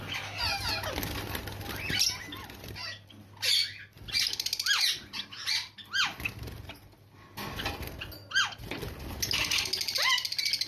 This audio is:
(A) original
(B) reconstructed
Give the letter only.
A